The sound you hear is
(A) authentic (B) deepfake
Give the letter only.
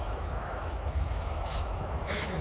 B